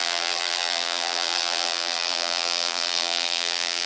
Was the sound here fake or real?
fake